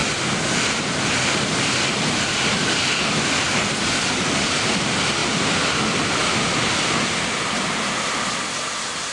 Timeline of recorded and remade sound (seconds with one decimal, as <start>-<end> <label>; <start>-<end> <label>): 0.0-4.3 recorded; 4.3-5.2 remade; 5.2-5.8 recorded; 5.8-6.2 remade; 6.2-6.7 recorded; 6.7-9.1 remade